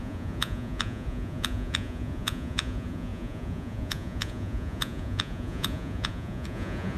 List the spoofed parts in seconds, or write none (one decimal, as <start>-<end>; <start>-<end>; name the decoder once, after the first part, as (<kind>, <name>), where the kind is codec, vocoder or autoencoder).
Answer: 0.0-7.0 (vocoder, Vocos)